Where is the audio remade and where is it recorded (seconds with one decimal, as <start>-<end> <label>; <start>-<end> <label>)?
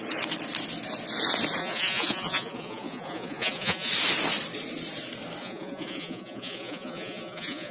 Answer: 0.0-1.6 recorded; 1.6-3.9 remade; 3.9-5.4 recorded; 5.4-7.7 remade